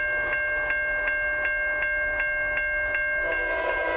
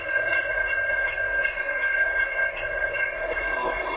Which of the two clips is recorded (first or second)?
first